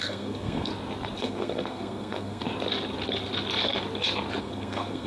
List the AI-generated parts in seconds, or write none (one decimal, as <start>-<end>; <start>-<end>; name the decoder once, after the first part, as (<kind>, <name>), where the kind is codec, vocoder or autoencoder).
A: 0.0-0.7 (codec, SNAC); 1.2-2.4; 4.4-5.1